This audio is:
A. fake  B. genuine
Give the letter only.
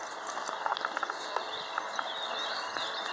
B